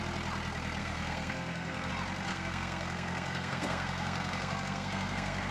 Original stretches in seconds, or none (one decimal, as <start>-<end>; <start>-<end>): 0.0-0.8; 1.9-2.3